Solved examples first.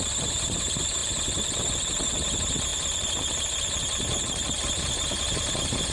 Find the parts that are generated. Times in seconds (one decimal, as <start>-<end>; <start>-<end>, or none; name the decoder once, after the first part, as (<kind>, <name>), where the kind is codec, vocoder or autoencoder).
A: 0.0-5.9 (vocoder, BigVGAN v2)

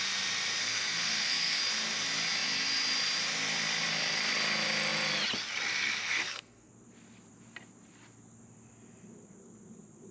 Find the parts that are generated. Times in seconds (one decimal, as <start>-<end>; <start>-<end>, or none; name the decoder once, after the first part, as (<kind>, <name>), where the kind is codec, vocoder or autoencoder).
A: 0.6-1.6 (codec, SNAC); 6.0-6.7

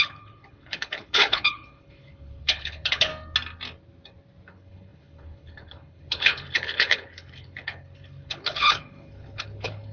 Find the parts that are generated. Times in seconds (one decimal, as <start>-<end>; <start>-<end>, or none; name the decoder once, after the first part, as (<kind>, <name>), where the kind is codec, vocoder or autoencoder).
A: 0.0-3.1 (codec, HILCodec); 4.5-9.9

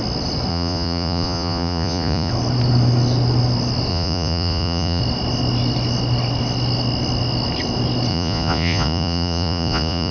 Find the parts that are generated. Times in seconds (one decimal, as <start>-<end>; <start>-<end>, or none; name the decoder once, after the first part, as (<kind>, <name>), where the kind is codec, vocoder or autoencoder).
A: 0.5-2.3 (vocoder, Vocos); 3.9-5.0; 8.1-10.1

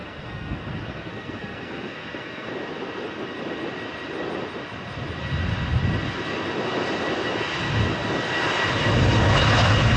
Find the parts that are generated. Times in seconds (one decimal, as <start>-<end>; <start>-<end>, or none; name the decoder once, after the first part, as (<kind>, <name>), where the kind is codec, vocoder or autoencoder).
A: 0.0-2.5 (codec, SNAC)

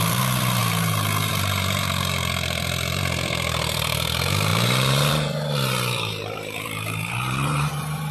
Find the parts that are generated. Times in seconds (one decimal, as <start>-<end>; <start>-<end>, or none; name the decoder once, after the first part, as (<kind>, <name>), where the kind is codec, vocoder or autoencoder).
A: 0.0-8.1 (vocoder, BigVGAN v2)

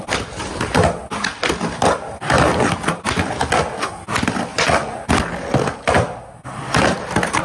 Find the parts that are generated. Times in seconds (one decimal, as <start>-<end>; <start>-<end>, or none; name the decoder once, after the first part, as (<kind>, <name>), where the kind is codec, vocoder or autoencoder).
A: 4.5-5.1 (vocoder, Vocos)

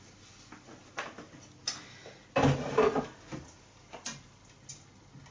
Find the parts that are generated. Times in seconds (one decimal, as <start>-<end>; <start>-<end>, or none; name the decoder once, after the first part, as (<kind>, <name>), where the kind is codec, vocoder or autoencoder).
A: none